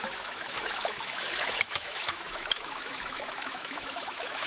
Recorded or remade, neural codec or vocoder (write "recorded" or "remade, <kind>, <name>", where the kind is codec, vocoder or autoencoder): remade, autoencoder, DAC-VAE